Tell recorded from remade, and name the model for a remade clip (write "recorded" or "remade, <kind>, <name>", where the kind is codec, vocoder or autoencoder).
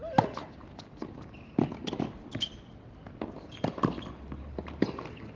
recorded